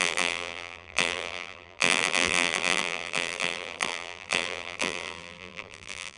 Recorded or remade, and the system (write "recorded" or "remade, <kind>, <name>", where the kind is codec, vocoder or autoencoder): remade, vocoder, BigVGAN v2